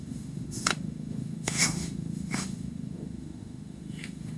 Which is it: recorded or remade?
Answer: remade